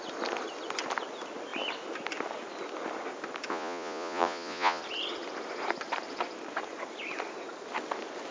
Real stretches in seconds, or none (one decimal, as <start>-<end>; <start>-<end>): 0.0-3.5; 4.8-8.3